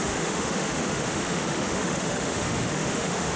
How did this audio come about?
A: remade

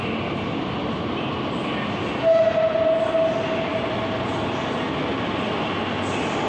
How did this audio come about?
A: recorded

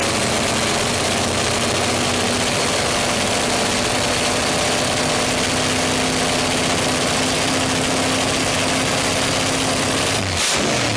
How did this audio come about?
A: recorded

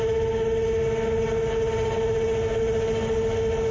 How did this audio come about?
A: recorded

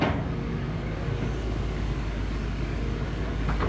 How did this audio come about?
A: remade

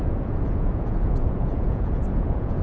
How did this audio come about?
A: remade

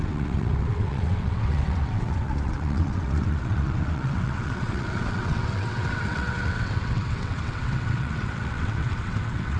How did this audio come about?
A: remade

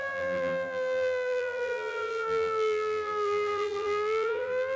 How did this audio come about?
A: remade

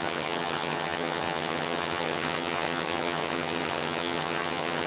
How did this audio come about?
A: remade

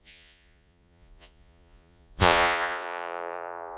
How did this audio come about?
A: remade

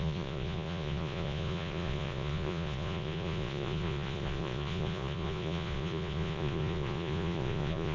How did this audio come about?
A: remade